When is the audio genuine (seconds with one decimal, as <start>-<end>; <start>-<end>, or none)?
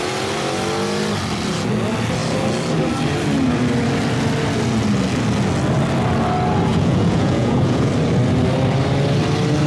0.0-6.7; 7.9-9.7